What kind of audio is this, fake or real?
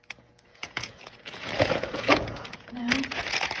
fake